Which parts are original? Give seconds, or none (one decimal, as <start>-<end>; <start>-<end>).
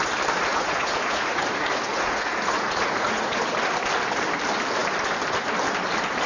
0.0-0.5; 3.4-6.3